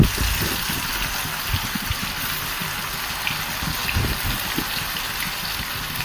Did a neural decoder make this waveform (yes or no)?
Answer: no